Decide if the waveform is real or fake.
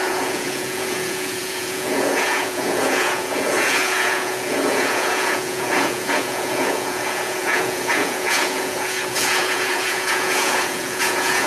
fake